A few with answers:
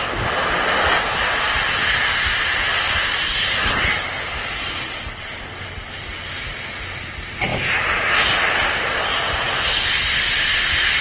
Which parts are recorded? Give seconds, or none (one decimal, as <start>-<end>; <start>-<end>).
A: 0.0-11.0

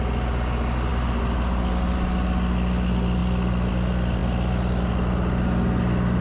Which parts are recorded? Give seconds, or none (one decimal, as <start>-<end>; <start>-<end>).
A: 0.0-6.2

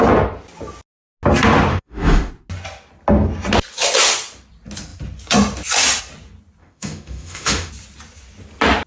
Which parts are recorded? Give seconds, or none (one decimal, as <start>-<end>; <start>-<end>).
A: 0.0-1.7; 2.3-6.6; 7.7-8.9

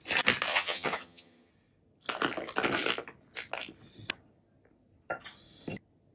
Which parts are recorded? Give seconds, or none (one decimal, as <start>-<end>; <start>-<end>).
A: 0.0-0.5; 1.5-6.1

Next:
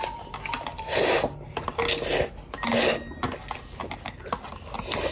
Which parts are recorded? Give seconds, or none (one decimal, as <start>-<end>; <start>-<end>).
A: 0.0-5.1

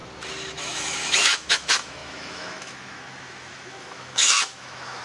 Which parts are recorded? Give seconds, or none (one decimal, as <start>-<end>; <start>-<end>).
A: 0.0-0.5

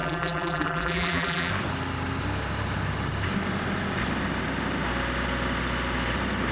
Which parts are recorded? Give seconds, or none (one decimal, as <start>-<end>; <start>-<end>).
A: 1.5-6.5